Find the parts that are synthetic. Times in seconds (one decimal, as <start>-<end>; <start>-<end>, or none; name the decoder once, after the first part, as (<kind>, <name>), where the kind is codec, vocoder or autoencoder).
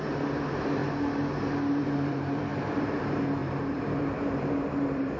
0.0-0.8 (vocoder, BigVGAN v2); 1.8-5.2